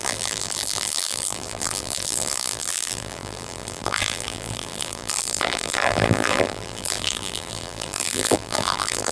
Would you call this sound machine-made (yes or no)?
yes